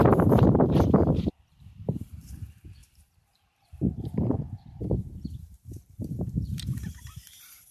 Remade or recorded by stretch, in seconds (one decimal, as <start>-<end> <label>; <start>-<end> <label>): 0.0-7.7 remade